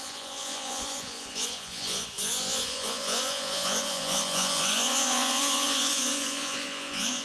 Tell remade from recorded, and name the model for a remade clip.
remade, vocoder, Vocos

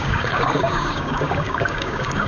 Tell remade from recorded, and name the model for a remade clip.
remade, codec, DAC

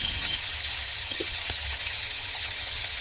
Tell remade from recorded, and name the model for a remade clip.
remade, vocoder, HiFi-GAN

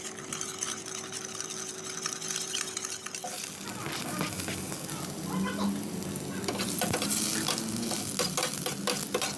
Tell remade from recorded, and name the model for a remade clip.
recorded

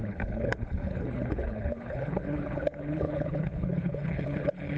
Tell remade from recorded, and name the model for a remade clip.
remade, codec, HILCodec